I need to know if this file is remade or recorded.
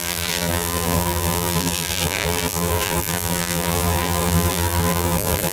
remade